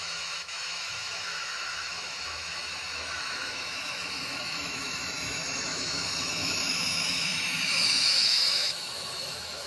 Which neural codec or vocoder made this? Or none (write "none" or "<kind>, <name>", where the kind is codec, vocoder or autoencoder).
autoencoder, DAC-VAE